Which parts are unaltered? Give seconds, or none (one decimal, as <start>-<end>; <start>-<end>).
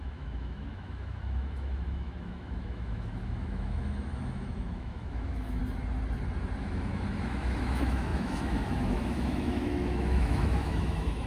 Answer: 5.6-6.6